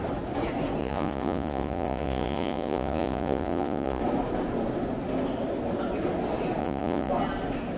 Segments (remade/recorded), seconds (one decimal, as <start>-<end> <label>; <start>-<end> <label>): 0.0-0.8 recorded; 0.8-4.0 remade; 4.0-6.6 recorded; 6.6-7.1 remade; 7.1-7.8 recorded